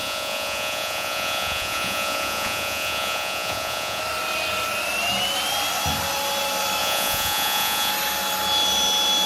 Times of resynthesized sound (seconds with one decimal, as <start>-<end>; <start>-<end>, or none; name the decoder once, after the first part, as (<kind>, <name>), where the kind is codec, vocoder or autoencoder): 0.0-4.0 (vocoder, Vocos); 6.8-7.9